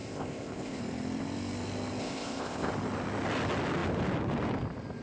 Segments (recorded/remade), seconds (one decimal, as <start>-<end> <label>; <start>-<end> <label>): 0.0-0.8 remade; 0.8-2.0 recorded; 2.0-2.7 remade; 2.7-5.0 recorded